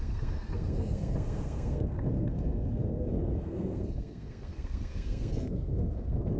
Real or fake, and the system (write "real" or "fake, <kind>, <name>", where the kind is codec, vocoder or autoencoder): fake, codec, SNAC